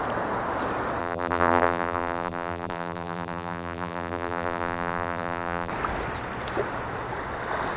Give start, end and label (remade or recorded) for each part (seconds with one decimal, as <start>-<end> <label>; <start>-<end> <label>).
0.0-1.0 recorded; 1.0-5.7 remade; 5.7-7.8 recorded